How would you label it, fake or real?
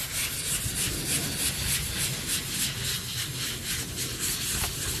real